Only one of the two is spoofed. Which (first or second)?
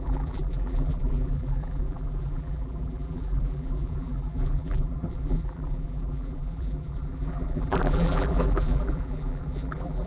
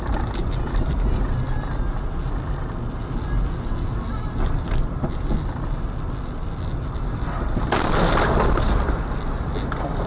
first